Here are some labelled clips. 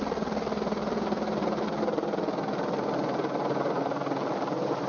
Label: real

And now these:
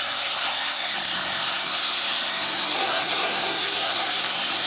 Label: fake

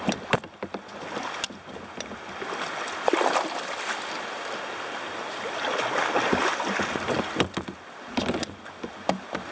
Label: real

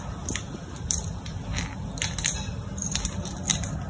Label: real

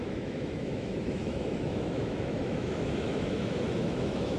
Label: fake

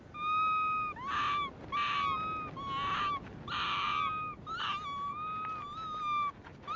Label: real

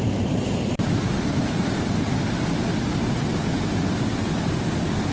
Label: real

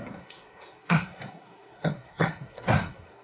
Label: fake